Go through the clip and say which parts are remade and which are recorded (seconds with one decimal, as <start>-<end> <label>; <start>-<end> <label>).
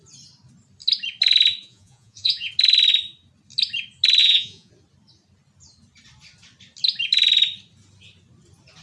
0.0-1.6 recorded; 1.6-2.5 remade; 2.5-4.2 recorded; 4.2-4.7 remade; 4.7-8.8 recorded